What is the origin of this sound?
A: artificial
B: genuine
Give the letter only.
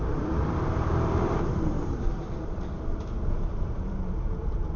A